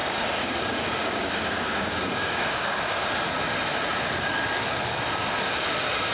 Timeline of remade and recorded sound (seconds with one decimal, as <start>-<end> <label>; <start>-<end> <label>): 0.0-2.7 remade; 2.7-6.1 recorded